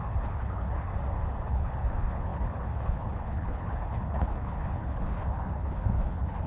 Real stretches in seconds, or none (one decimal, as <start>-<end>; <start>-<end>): 0.9-1.5